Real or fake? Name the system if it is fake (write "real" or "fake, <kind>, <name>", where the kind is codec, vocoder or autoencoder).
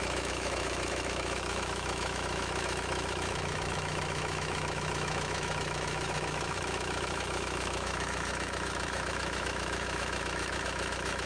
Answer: fake, autoencoder, DAC-VAE